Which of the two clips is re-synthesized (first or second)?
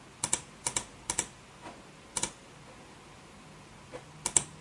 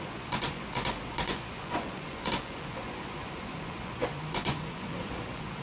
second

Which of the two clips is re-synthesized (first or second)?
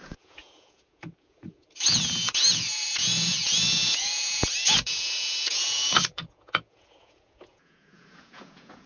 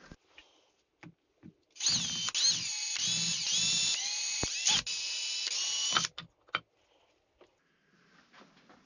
first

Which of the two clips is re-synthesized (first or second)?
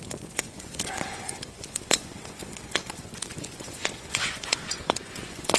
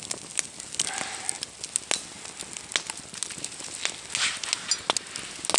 first